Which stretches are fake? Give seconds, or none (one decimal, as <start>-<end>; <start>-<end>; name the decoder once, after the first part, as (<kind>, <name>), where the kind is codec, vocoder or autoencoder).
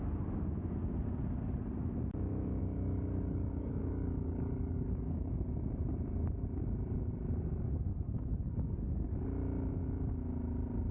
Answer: 2.6-5.3 (codec, DAC); 7.9-8.9